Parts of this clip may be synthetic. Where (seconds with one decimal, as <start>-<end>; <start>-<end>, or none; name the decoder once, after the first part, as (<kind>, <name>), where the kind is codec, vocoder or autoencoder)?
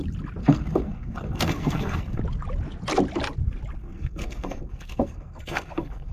0.4-2.2 (codec, SNAC); 3.8-6.1